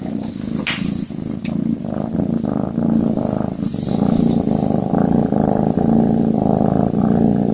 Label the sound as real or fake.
real